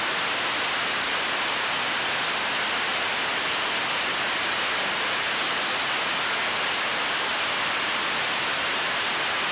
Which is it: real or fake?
real